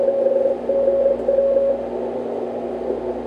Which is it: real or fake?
real